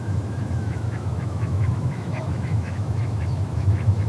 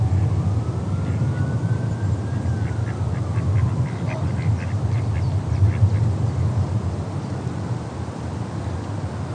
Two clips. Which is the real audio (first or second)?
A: second